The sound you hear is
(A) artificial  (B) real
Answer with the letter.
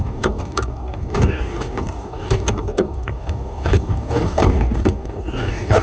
A